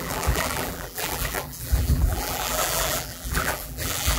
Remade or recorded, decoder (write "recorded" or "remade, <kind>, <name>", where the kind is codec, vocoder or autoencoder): remade, vocoder, BigVGAN v2